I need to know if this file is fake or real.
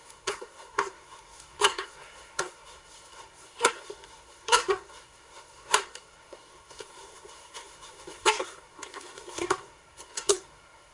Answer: fake